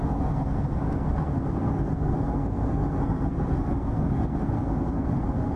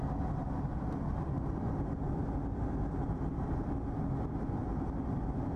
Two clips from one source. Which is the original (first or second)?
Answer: second